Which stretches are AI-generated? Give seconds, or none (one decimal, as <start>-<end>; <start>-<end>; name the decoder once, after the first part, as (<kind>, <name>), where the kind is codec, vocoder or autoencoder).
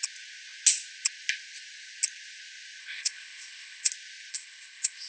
2.8-3.9 (codec, ZipCodec); 4.3-5.1